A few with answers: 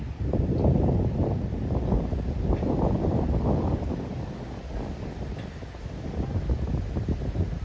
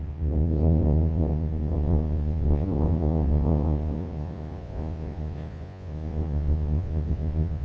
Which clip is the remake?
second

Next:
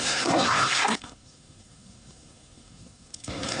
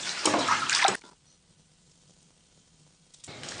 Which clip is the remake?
first